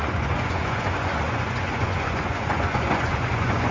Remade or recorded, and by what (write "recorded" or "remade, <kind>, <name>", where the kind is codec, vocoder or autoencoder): remade, vocoder, Vocos